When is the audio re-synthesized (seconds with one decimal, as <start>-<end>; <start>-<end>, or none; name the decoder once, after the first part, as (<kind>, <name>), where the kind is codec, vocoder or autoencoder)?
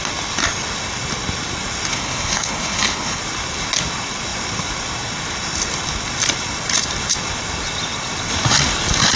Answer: 1.9-3.2 (codec, HILCodec)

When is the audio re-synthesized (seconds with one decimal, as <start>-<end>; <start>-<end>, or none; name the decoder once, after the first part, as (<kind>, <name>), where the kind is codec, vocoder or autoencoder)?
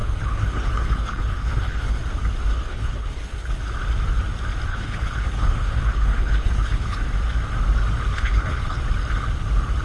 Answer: 0.0-2.0 (codec, HILCodec); 2.5-3.6; 4.7-7.0; 8.1-8.8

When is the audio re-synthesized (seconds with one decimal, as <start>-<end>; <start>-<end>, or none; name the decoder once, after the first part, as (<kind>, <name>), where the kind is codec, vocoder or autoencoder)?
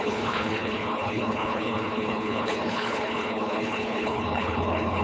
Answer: 0.0-5.0 (codec, HILCodec)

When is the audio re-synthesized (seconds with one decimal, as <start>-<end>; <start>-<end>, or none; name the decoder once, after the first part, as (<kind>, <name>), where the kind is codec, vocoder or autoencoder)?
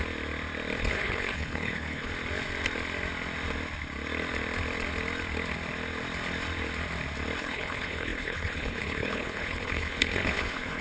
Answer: 0.9-2.1 (codec, HILCodec); 7.4-10.8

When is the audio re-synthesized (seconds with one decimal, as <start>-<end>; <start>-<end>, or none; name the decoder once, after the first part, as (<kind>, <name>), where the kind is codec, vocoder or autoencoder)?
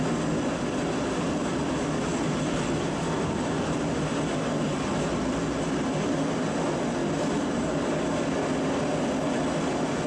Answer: none